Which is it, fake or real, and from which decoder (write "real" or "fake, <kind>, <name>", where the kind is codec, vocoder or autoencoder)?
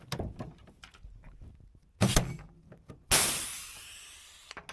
real